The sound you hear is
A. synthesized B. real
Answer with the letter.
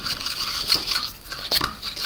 B